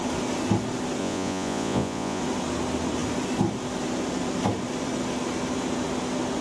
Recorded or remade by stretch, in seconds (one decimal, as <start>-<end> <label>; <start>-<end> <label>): 0.0-1.0 recorded; 1.0-2.2 remade; 2.2-6.4 recorded